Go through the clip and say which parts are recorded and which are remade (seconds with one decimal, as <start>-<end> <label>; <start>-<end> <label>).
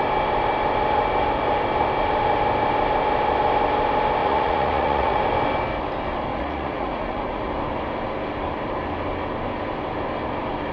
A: 0.0-4.2 recorded; 4.2-5.2 remade; 5.2-6.3 recorded; 6.3-7.5 remade; 7.5-10.7 recorded